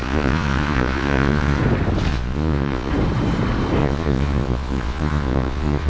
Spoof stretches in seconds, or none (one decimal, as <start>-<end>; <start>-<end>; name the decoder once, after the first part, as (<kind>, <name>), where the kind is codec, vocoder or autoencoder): 0.0-1.6 (vocoder, Vocos); 2.1-2.9; 3.8-5.9